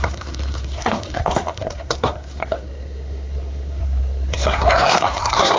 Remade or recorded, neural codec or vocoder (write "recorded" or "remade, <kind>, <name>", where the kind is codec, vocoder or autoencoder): remade, codec, SNAC